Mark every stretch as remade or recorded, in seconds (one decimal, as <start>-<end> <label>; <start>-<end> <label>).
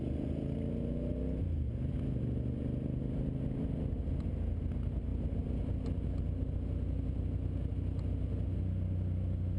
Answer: 0.0-9.6 recorded